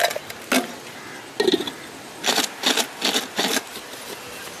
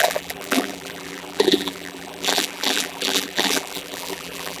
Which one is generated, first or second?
second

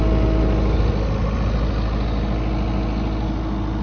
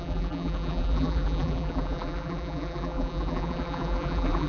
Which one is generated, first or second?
second